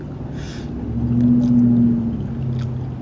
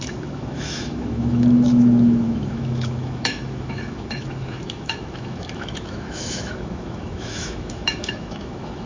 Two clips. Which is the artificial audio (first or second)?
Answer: second